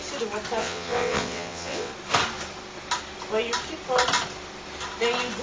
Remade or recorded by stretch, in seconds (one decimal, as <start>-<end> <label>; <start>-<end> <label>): 0.0-0.6 recorded; 0.6-1.9 remade; 1.9-5.4 recorded